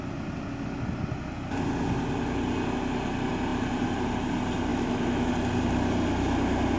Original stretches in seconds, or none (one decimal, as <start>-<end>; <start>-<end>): 0.0-4.7; 5.3-6.8